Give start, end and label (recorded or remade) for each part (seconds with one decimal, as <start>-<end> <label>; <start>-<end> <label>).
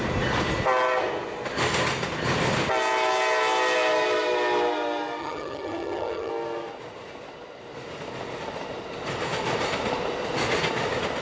0.0-5.2 recorded; 5.2-6.3 remade; 6.3-11.2 recorded